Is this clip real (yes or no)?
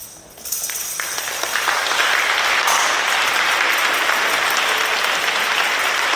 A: yes